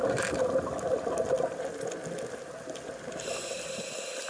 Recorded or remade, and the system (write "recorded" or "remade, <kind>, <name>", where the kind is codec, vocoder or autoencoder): recorded